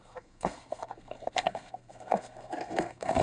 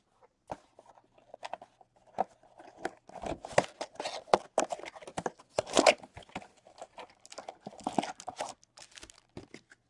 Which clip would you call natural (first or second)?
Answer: second